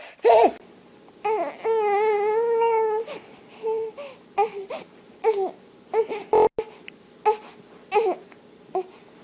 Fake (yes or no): no